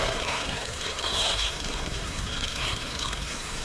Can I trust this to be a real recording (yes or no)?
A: no